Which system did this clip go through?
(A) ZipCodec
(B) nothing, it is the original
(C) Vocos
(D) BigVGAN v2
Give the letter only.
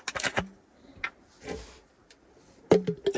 B